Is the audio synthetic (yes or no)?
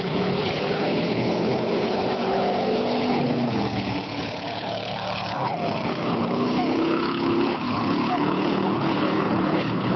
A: yes